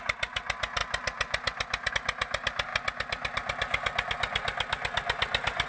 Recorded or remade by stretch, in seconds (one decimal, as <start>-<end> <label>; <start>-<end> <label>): 0.0-5.7 recorded